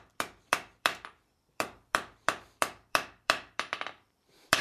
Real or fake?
fake